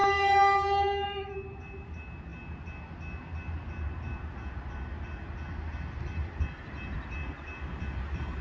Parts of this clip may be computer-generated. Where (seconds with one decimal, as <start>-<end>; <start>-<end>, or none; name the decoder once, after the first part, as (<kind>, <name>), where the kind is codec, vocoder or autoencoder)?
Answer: 0.0-1.6 (autoencoder, DAC-VAE)